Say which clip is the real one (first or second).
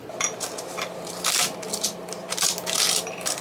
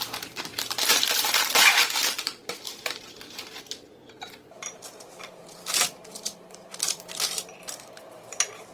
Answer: first